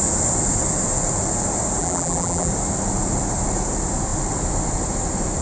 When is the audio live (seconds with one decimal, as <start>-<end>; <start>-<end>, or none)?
0.0-1.8; 2.5-5.4